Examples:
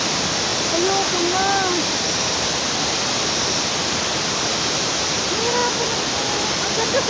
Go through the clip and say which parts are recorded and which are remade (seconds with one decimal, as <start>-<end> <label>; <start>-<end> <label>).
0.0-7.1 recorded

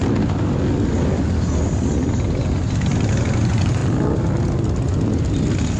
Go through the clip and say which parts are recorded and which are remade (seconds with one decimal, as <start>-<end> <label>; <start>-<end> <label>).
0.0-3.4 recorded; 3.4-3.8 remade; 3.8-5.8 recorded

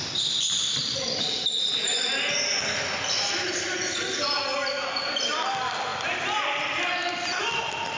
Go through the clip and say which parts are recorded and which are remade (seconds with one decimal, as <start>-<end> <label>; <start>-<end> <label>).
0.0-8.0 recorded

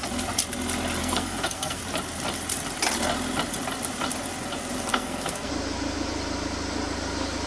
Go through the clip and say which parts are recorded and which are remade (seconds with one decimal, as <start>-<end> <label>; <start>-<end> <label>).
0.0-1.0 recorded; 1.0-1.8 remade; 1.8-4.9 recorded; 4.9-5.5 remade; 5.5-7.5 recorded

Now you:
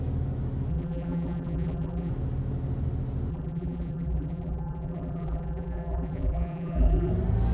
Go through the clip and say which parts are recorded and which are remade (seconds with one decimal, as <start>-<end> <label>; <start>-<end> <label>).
0.0-0.7 recorded; 0.7-2.1 remade; 2.1-3.3 recorded; 3.3-7.1 remade; 7.1-7.5 recorded